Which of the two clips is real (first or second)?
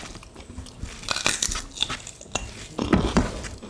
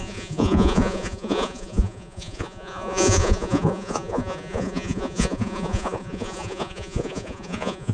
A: first